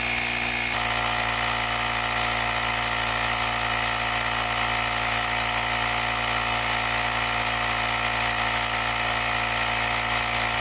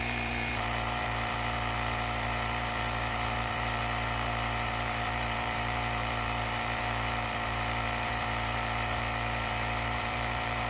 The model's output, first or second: second